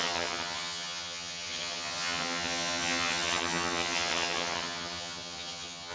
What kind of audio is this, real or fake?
fake